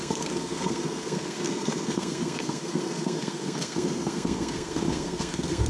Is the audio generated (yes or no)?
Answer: yes